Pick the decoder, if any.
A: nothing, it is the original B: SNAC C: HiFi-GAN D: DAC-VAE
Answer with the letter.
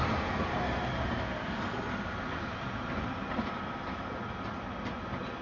A